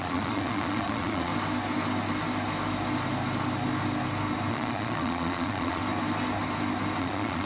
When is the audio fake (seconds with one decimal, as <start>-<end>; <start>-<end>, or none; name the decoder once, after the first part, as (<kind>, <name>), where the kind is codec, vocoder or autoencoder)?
0.0-1.3 (vocoder, Vocos); 4.5-5.8; 7.0-7.5